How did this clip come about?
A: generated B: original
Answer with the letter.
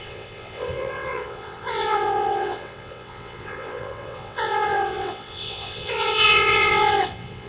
A